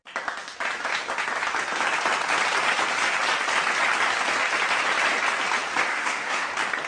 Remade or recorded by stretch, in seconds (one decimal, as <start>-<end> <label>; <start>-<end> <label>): 0.0-5.9 recorded; 5.9-6.5 remade; 6.5-6.9 recorded